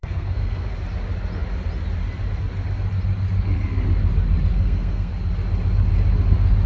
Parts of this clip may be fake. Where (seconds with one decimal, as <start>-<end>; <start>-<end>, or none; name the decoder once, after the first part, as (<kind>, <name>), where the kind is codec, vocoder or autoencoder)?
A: 0.0-0.7 (codec, SNAC); 4.5-5.1